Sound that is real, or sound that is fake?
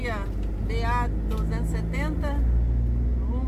real